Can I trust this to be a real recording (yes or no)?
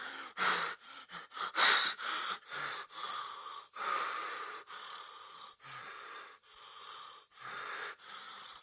yes